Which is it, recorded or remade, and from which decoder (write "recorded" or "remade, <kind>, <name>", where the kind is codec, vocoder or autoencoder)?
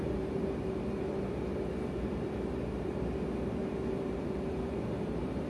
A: remade, vocoder, BigVGAN v2